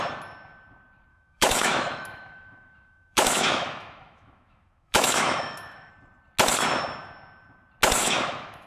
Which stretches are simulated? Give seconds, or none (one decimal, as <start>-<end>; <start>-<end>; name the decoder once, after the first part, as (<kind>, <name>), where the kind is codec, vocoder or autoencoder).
1.1-5.9 (autoencoder, DAC-VAE); 8.0-8.7